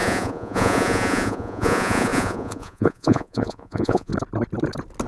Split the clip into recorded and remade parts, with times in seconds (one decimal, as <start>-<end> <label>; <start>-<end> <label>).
0.0-4.1 remade; 4.1-5.1 recorded